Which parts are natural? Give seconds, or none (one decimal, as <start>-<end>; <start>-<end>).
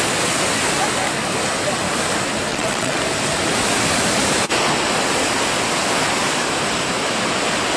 0.0-2.5; 3.0-7.8